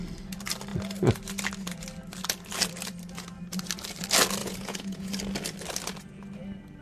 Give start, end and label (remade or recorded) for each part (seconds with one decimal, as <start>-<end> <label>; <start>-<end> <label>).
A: 0.0-4.4 recorded; 4.4-5.1 remade; 5.1-6.8 recorded